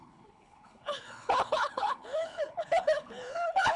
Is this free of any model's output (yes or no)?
no